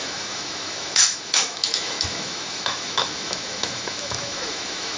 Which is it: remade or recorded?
remade